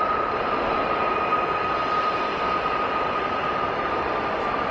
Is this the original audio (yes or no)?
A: yes